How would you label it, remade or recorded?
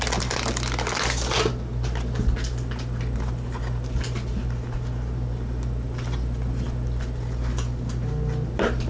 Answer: recorded